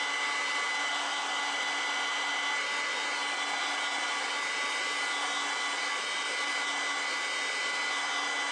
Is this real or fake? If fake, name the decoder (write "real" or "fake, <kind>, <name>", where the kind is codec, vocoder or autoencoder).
real